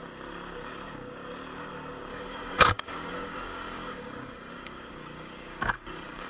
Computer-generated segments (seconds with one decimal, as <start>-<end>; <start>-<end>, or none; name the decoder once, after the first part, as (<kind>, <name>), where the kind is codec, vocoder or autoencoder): 2.1-6.3 (codec, DAC)